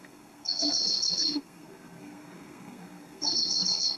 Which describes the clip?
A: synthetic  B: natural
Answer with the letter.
A